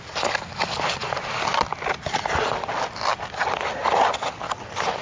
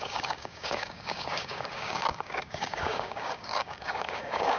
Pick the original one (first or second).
first